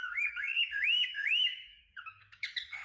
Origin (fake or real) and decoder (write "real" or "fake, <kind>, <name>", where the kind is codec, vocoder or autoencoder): fake, codec, DAC